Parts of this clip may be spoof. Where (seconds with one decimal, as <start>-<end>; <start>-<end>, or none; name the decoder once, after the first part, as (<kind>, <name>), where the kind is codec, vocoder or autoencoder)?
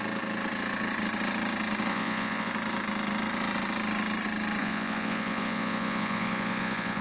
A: 1.9-2.5 (vocoder, Vocos); 4.6-7.0